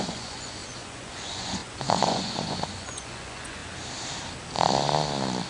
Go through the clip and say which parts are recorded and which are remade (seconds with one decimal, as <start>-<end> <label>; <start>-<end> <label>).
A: 0.0-3.6 remade; 3.6-5.5 recorded